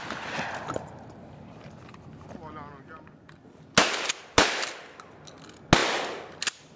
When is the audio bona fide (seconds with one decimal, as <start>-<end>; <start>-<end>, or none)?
0.0-6.8